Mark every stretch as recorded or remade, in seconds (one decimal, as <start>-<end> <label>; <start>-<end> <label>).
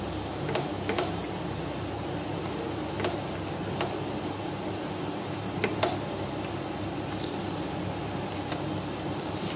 0.0-9.6 recorded